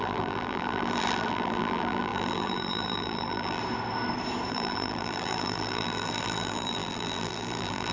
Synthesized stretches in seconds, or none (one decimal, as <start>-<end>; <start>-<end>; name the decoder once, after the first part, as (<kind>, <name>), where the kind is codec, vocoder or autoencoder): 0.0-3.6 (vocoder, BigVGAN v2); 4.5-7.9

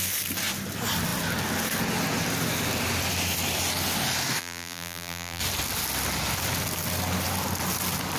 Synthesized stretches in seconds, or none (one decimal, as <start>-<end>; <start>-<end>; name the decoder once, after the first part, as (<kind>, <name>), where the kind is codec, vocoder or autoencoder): 4.4-5.4 (vocoder, BigVGAN v2)

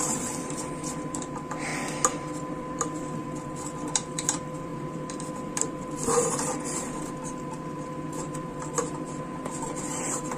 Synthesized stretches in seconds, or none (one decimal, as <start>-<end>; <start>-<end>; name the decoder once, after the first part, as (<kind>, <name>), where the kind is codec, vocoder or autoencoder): 0.0-1.7 (vocoder, BigVGAN v2); 2.2-10.4

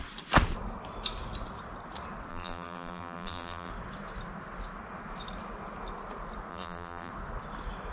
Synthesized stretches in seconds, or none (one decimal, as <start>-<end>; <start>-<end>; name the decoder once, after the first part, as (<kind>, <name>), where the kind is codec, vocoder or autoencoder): 2.3-3.7 (vocoder, BigVGAN v2); 6.5-7.1